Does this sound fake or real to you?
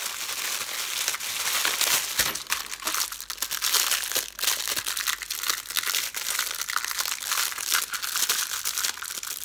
real